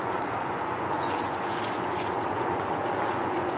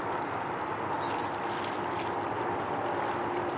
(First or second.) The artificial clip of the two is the first